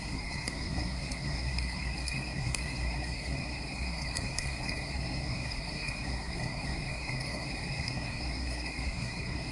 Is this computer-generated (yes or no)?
yes